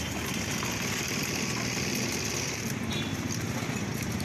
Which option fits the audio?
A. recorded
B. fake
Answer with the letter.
A